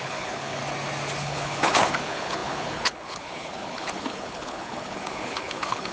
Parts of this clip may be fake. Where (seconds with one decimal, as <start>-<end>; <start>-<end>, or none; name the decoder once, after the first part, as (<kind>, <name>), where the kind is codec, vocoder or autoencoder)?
0.0-0.6 (codec, HILCodec); 1.2-5.9